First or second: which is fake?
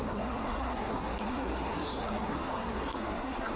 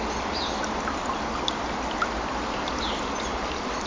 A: first